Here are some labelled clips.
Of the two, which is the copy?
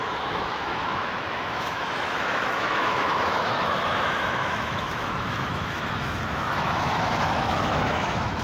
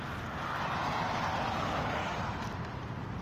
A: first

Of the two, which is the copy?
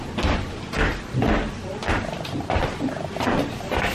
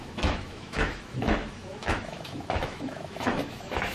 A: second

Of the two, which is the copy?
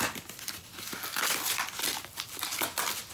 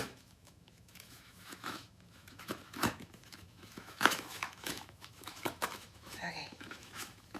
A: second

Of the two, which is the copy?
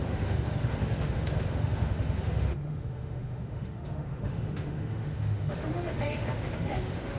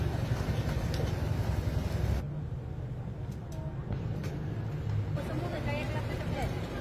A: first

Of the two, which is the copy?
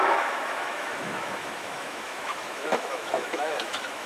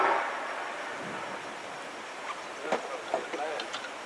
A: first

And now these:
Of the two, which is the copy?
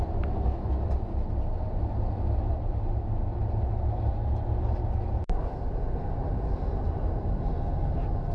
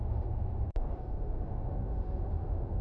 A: second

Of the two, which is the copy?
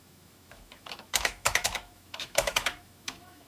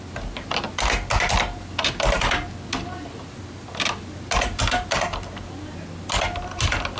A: first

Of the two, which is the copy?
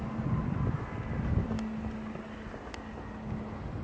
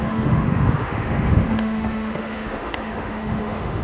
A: second